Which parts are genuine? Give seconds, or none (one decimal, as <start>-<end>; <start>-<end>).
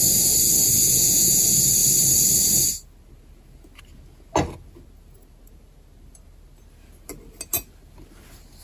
0.0-0.8; 1.4-8.6